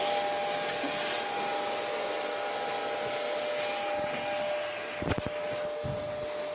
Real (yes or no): yes